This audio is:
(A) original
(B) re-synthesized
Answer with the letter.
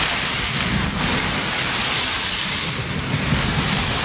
B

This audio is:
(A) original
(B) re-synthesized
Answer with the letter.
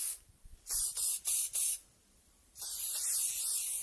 B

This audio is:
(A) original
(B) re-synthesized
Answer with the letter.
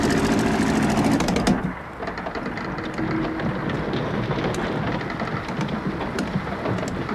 A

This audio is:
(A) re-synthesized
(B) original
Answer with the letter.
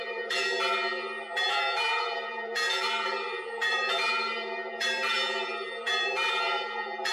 A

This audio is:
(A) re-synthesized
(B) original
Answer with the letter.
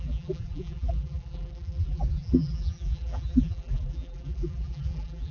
A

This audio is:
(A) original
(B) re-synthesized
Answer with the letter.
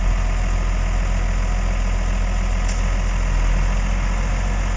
A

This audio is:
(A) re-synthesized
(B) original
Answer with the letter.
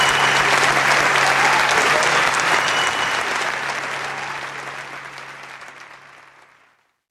B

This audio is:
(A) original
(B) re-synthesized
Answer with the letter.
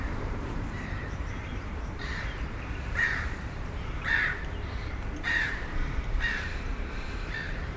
B